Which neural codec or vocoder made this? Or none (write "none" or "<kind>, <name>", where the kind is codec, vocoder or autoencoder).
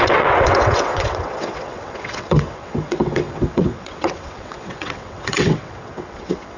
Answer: vocoder, WaveNeXt